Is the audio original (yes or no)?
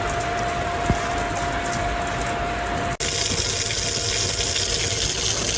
yes